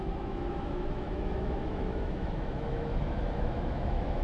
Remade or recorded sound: remade